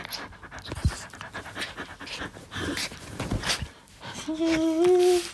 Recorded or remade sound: recorded